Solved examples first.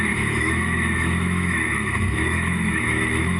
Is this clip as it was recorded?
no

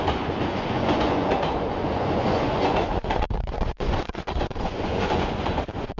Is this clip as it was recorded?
no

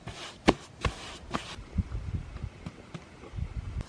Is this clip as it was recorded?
yes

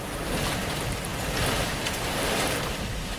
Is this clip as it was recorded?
no